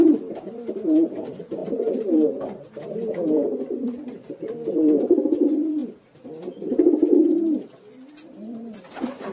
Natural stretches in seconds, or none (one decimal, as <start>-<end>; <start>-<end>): 5.8-8.2